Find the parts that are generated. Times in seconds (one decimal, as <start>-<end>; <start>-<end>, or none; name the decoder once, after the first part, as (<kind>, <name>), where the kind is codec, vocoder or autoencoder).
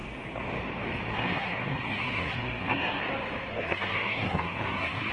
1.1-3.0 (codec, SNAC); 3.5-5.1